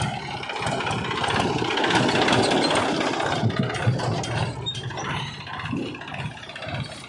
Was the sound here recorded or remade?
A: recorded